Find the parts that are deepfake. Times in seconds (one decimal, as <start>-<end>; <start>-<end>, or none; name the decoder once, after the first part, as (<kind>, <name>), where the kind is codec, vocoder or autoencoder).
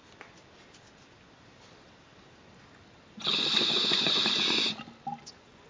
3.4-4.2 (vocoder, Vocos); 5.2-5.7